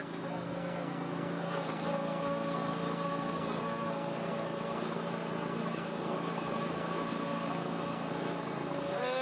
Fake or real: fake